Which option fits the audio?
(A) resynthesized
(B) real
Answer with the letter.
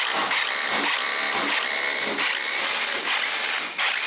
B